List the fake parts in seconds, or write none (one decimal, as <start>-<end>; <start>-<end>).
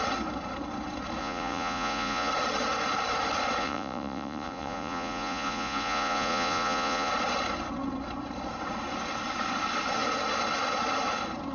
1.2-2.3; 3.6-7.1